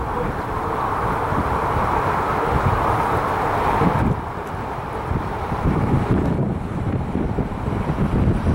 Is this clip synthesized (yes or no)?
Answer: yes